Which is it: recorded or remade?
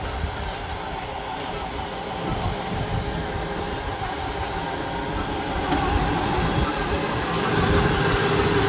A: recorded